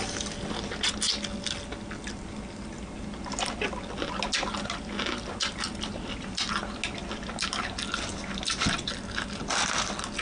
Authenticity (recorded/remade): recorded